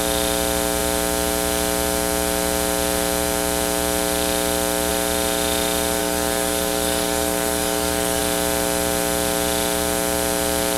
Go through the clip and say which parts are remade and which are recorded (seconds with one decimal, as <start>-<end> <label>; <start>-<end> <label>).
0.0-6.0 recorded; 6.0-8.2 remade; 8.2-10.8 recorded